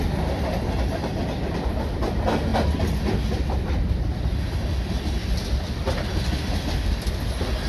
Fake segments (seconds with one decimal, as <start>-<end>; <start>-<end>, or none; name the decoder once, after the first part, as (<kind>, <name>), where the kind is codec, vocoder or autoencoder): none